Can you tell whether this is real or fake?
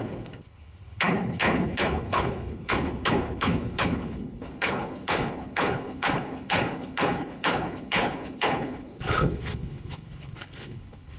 fake